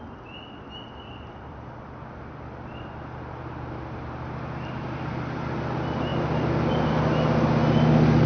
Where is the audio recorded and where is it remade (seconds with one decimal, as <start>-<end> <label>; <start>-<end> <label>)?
0.0-8.3 recorded